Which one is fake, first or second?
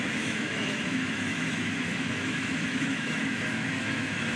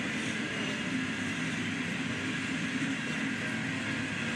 first